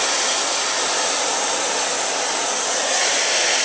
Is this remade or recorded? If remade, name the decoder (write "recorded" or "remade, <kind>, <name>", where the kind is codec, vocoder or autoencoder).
recorded